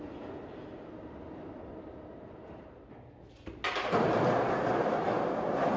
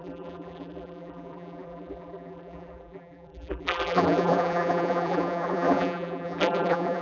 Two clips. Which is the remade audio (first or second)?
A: second